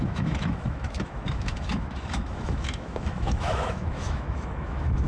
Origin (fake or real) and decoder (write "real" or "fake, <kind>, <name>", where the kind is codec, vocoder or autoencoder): fake, autoencoder, DAC-VAE